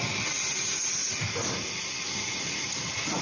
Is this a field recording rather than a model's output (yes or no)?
yes